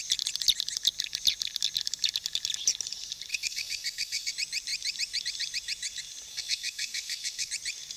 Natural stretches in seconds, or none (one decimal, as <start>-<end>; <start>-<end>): 0.0-3.3; 4.3-6.3; 7.5-8.0